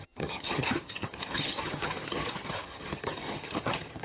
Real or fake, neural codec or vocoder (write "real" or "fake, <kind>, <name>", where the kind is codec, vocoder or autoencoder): fake, vocoder, HiFi-GAN